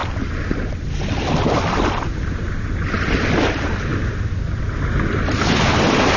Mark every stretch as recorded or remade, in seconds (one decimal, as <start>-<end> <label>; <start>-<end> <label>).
0.0-3.1 remade; 3.1-3.9 recorded; 3.9-4.6 remade; 4.6-6.2 recorded

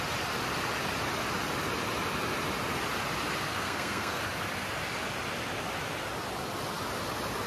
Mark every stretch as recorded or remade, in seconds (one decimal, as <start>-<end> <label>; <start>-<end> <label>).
0.0-3.5 recorded; 3.5-4.2 remade; 4.2-7.5 recorded